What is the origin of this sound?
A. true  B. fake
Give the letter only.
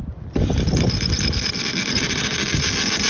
A